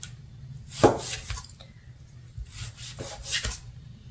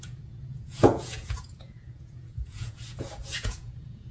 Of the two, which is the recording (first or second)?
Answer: first